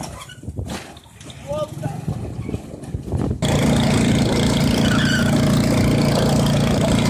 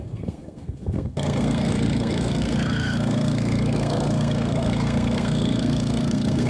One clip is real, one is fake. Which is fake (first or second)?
second